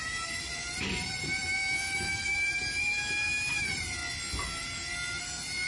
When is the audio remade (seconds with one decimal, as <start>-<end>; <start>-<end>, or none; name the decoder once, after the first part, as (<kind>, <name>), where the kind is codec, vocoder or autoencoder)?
0.0-4.0 (vocoder, BigVGAN v2); 4.6-5.7